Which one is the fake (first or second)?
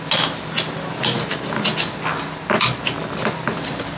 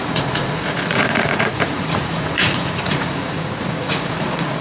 second